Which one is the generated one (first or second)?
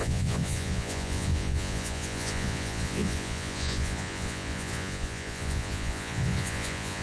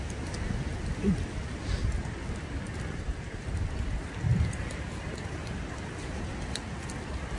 first